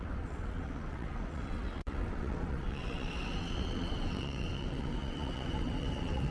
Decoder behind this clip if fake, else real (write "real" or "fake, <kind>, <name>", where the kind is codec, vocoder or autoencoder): fake, vocoder, WaveNeXt